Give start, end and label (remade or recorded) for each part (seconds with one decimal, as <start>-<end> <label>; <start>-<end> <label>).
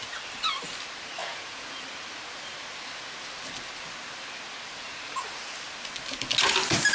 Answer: 0.0-1.2 recorded; 1.2-1.8 remade; 1.8-6.9 recorded